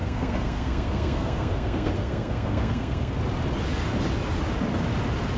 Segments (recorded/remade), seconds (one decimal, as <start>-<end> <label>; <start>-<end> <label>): 0.0-3.2 remade; 3.2-5.4 recorded